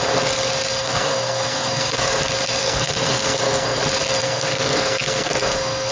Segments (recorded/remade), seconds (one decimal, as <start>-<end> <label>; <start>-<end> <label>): 0.0-0.8 recorded; 0.8-2.2 remade; 2.2-2.6 recorded; 2.6-3.8 remade; 3.8-4.2 recorded; 4.2-5.9 remade